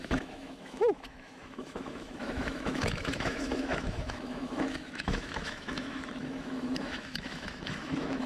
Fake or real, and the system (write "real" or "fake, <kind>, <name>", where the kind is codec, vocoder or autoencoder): fake, autoencoder, DAC-VAE